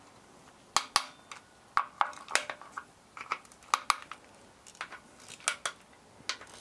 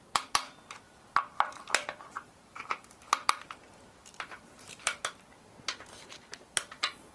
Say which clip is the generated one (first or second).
second